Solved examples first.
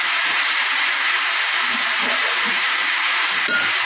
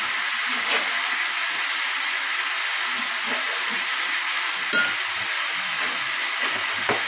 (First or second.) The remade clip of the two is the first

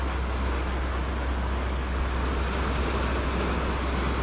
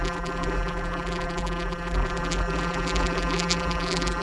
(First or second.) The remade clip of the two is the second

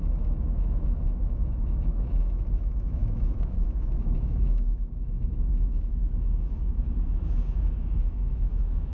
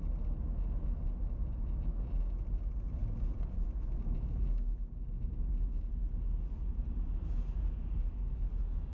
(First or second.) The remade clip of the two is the first